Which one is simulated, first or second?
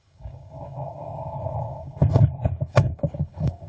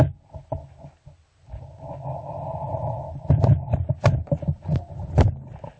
first